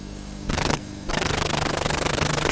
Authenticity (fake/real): fake